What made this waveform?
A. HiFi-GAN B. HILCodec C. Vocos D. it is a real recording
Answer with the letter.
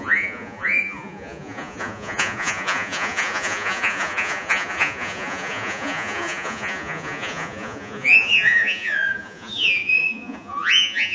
C